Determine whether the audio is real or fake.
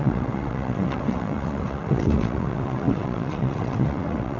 fake